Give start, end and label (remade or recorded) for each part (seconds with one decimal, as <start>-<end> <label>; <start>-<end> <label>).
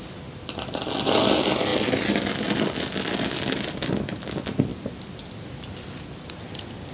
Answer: 0.0-6.9 recorded